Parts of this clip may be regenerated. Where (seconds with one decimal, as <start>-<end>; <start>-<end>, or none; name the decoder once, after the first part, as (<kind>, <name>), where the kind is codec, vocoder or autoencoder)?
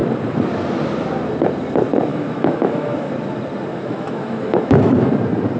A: 2.1-3.1 (autoencoder, DAC-VAE); 3.7-5.1